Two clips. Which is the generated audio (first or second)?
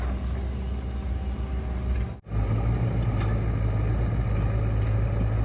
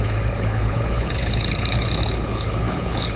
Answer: second